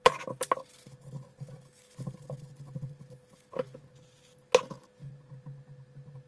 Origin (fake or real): real